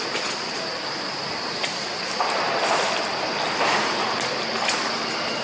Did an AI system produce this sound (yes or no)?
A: no